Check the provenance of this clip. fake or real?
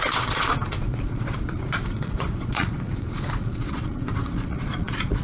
fake